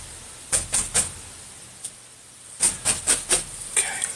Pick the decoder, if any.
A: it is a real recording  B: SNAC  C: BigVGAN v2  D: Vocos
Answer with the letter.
A